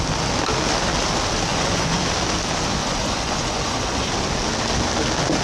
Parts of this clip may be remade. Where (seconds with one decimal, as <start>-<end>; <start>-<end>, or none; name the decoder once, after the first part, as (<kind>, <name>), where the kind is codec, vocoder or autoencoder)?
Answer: 1.5-2.0 (vocoder, Vocos); 2.8-4.1